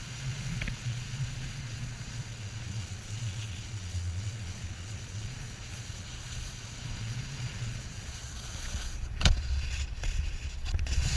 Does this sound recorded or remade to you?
remade